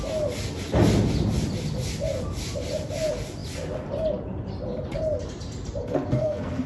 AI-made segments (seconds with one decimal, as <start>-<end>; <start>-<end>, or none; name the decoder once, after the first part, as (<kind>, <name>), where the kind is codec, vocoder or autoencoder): 5.8-6.7 (codec, SNAC)